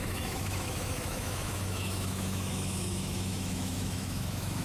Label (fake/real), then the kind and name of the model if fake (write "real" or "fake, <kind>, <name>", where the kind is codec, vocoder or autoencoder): fake, autoencoder, DAC-VAE